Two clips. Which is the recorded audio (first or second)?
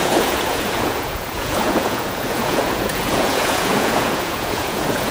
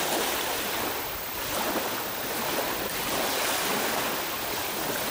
second